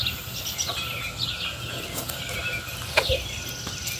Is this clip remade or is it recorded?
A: recorded